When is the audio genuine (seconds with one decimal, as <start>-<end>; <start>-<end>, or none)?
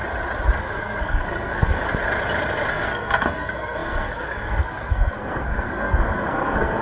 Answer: 0.0-0.6; 1.8-2.7